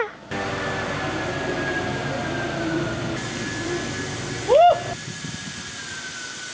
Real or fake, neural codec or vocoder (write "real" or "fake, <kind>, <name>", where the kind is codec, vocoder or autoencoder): real